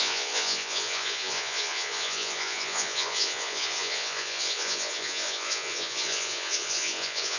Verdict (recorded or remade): remade